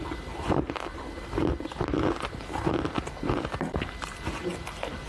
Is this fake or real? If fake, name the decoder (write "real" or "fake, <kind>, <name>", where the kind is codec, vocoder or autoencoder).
real